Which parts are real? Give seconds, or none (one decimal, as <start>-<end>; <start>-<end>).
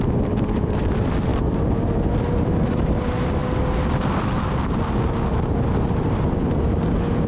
3.4-7.3